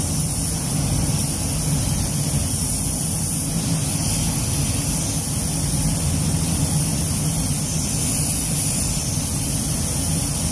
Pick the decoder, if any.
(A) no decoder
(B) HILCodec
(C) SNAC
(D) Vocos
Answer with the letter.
A